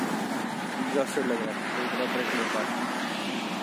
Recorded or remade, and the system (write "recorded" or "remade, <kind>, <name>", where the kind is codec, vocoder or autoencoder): remade, vocoder, BigVGAN v2